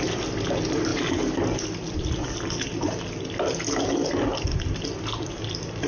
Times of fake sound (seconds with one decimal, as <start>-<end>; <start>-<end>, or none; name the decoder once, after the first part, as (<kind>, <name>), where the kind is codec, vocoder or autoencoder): none